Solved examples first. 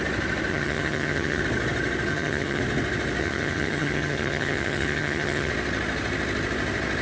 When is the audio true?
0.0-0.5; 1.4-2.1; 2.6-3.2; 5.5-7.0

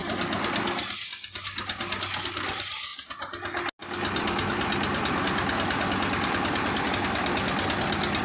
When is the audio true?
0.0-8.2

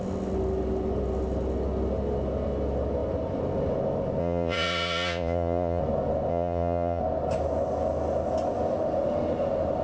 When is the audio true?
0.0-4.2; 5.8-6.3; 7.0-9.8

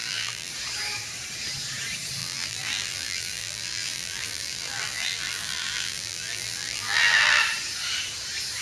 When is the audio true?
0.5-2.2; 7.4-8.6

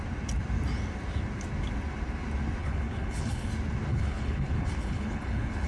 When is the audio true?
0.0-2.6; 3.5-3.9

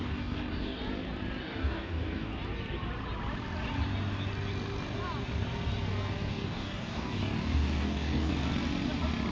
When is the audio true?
0.8-1.4; 2.3-6.3; 8.3-9.3